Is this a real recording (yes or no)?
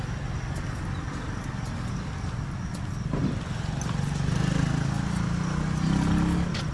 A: yes